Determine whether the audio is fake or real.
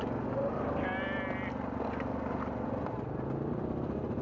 real